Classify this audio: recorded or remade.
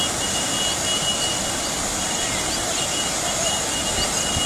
recorded